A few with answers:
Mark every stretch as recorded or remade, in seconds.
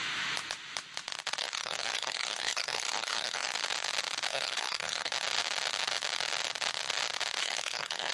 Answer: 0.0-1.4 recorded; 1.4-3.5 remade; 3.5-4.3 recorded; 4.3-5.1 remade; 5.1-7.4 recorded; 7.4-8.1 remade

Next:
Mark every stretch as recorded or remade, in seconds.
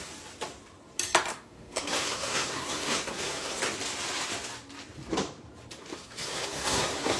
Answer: 0.0-1.3 recorded; 1.3-3.6 remade; 3.6-5.8 recorded; 5.8-7.2 remade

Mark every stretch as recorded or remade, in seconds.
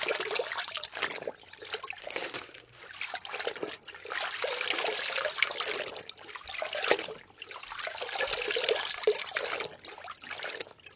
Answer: 0.0-2.0 recorded; 2.0-2.8 remade; 2.8-11.0 recorded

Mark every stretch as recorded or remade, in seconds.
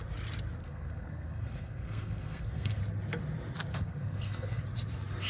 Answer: 0.0-0.6 recorded; 0.6-2.8 remade; 2.8-3.7 recorded; 3.7-4.6 remade; 4.6-5.3 recorded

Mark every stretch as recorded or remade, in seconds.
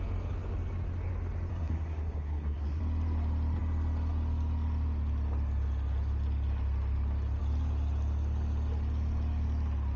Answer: 0.0-1.5 recorded; 1.5-2.8 remade; 2.8-10.0 recorded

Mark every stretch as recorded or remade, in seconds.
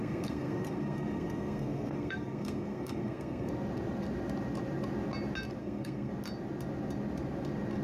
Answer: 0.0-3.5 remade; 3.5-5.6 recorded; 5.6-6.1 remade; 6.1-7.8 recorded